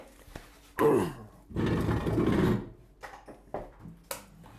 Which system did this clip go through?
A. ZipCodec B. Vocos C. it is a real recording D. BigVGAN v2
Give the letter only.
C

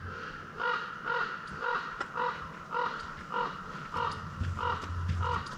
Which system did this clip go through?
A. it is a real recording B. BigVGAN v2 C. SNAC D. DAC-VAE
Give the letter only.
A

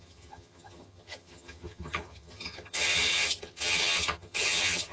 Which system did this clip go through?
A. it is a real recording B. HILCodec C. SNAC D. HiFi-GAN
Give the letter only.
D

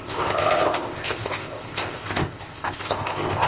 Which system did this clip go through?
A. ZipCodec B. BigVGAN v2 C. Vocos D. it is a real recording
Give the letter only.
A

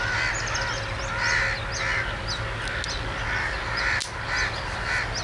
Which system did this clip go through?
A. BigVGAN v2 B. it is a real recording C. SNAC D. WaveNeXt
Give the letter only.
B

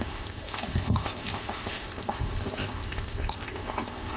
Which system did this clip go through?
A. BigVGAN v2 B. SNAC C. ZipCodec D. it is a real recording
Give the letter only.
C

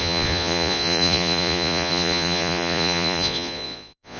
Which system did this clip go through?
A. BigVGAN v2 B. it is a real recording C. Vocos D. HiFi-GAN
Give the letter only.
C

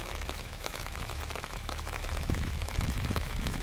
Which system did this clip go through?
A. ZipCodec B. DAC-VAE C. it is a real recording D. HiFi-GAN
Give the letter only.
B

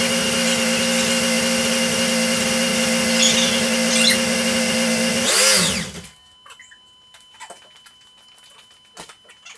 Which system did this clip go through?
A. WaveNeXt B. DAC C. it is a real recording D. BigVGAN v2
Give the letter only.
C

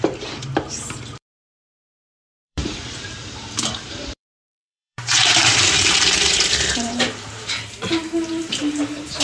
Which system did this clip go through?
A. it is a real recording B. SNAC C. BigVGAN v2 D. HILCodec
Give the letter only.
C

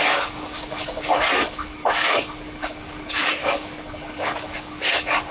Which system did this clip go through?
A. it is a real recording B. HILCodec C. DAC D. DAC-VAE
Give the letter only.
C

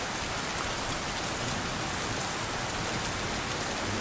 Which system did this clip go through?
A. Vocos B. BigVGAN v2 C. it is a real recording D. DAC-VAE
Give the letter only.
C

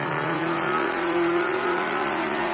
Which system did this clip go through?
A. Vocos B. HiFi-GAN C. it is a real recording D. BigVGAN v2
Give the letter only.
A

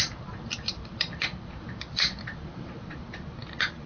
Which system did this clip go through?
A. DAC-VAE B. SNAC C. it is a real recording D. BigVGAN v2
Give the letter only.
D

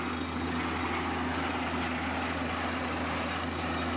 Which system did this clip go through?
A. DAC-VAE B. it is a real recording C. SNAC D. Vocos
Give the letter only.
B